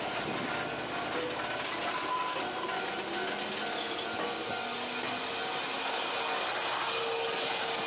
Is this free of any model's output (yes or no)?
yes